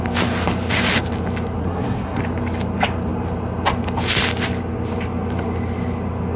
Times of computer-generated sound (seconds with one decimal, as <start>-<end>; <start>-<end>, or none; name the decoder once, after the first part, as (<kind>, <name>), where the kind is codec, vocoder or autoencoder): 1.6-2.2 (codec, SNAC)